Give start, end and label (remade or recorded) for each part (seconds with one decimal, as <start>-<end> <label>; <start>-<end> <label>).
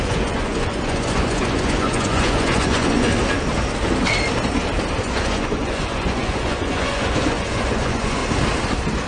0.0-3.1 remade; 3.1-5.0 recorded; 5.0-8.2 remade; 8.2-9.1 recorded